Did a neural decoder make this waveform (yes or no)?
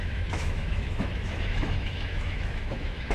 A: yes